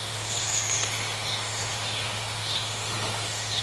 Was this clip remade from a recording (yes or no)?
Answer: yes